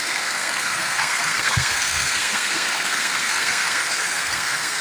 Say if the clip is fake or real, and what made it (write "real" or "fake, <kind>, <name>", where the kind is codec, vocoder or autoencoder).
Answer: fake, codec, SNAC